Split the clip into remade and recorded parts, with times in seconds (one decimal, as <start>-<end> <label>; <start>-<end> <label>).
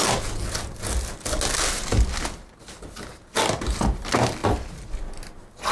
0.0-5.7 recorded